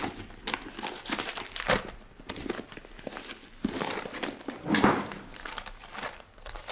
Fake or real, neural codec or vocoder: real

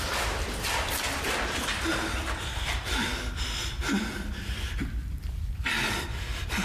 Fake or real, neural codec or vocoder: fake, vocoder, BigVGAN v2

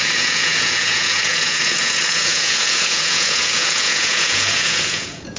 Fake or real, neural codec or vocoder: fake, vocoder, Vocos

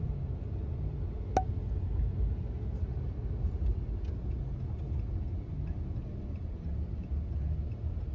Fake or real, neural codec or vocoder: real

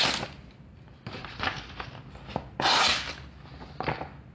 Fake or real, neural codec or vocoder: real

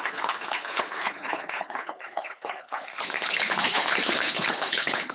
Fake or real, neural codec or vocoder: fake, codec, HILCodec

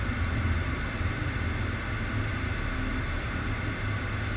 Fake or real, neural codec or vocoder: real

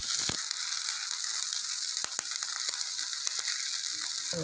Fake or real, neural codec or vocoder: real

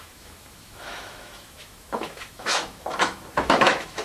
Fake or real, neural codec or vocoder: fake, autoencoder, DAC-VAE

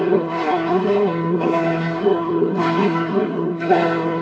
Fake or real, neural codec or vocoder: fake, codec, SNAC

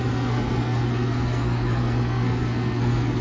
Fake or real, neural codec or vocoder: fake, codec, SNAC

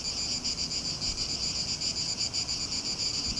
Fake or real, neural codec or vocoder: real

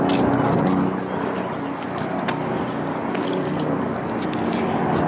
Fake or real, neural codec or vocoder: real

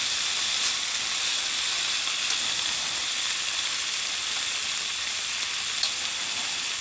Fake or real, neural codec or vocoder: real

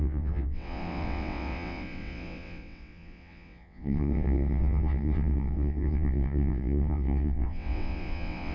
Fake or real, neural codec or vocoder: fake, vocoder, WaveNeXt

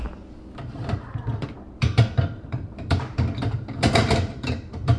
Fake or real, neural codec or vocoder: fake, vocoder, BigVGAN v2